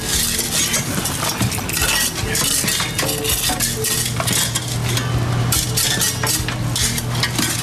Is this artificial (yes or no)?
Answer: no